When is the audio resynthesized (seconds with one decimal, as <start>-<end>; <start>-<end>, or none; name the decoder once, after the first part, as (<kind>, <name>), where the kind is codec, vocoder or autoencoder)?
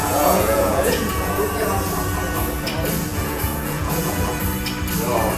0.0-1.4 (vocoder, Vocos); 3.1-4.4